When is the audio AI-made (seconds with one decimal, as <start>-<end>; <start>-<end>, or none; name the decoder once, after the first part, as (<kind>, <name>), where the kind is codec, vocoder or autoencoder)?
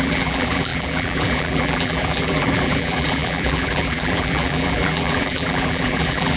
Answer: 0.0-6.4 (vocoder, BigVGAN v2)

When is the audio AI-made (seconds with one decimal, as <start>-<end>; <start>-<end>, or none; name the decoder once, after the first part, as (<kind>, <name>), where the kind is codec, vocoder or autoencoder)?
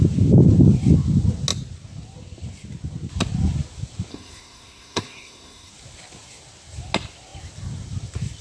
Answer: 4.1-5.7 (codec, SNAC)